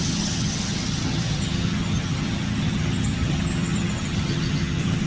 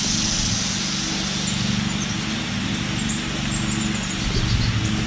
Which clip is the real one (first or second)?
second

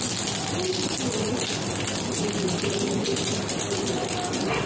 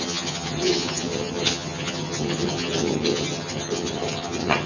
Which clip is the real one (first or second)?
first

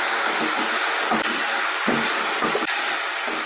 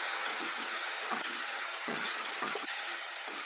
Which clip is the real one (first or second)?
first